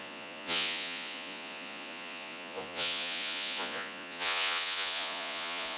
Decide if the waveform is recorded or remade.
remade